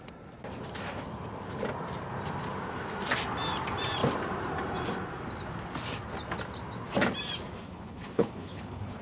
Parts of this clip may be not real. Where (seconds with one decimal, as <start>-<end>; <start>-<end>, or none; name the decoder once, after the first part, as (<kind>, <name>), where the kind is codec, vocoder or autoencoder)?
7.6-9.0 (codec, HILCodec)